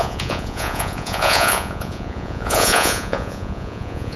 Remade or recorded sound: remade